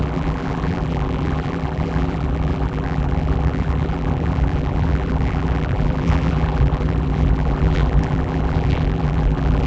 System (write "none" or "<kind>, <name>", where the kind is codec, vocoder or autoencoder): vocoder, BigVGAN v2